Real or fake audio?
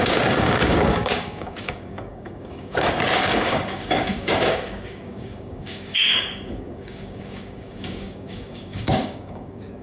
fake